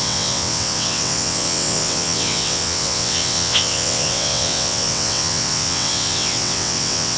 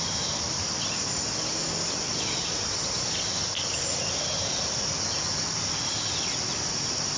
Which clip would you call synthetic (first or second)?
first